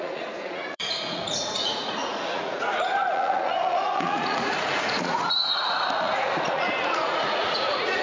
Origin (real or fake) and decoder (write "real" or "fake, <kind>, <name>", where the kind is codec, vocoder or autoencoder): fake, vocoder, Vocos